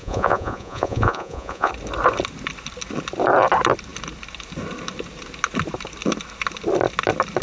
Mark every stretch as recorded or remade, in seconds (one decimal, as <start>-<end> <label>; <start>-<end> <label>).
0.0-1.7 remade; 1.7-7.4 recorded